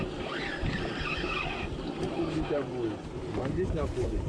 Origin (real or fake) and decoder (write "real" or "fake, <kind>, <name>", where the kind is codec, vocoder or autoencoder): real